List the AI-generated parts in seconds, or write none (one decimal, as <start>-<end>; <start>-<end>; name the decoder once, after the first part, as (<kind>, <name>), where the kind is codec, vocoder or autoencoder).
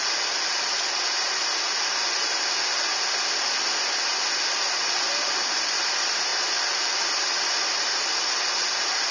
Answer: none